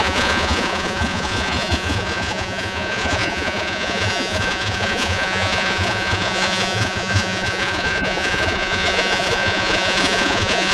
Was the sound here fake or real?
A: fake